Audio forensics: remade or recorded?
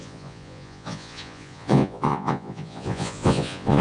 remade